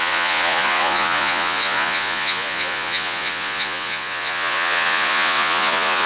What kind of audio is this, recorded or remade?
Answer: remade